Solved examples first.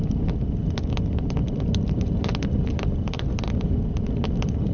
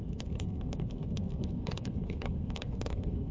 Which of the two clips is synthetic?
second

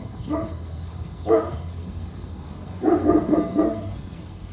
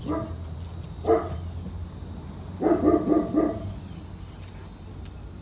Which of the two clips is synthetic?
first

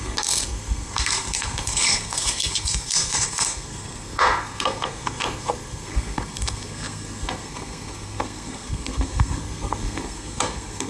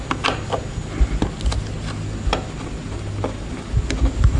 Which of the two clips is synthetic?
first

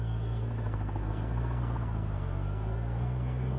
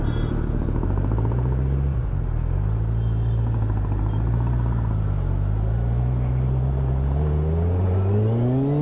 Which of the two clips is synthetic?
first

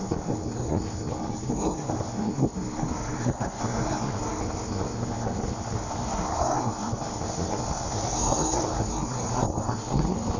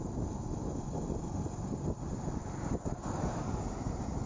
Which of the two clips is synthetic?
first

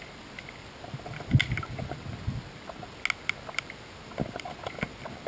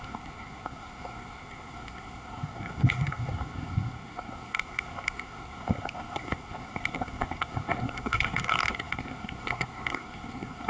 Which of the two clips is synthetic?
second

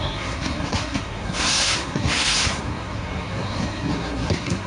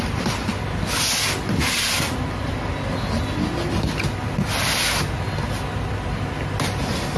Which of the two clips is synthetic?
first